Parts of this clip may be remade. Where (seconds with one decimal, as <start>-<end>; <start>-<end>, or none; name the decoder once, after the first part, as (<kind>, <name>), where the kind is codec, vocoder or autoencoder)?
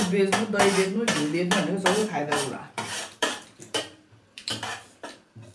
2.0-4.5 (vocoder, BigVGAN v2)